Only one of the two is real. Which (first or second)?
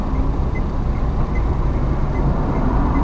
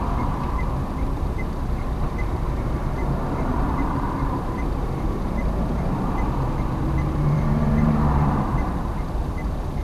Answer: first